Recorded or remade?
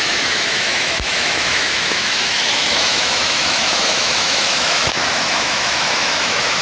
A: remade